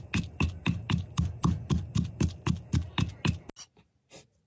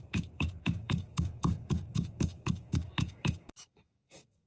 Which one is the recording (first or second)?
first